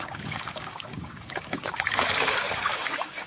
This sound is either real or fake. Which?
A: fake